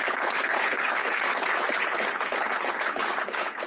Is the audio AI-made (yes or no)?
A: yes